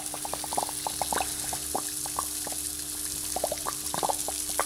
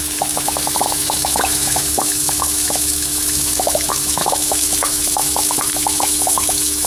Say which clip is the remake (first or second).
second